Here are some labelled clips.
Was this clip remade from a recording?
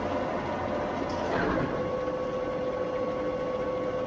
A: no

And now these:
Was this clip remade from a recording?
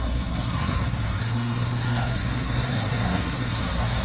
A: yes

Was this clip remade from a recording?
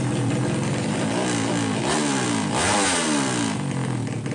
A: no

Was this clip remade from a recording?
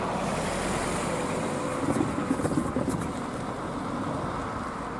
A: no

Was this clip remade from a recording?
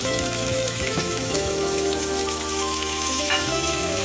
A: yes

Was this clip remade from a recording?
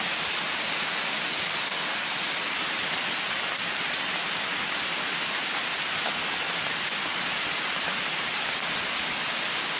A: no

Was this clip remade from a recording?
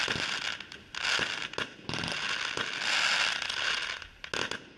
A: no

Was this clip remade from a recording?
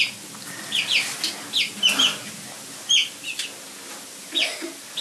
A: no